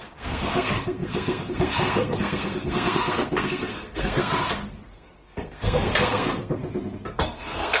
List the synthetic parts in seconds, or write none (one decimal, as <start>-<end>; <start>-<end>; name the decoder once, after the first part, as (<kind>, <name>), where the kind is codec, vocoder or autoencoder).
0.0-6.6 (codec, SNAC); 7.1-7.8